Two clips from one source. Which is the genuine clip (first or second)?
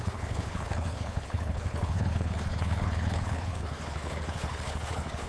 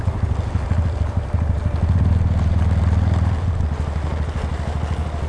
second